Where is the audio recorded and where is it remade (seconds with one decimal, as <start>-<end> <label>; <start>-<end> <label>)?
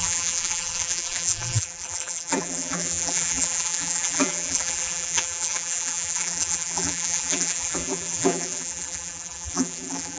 0.0-10.2 remade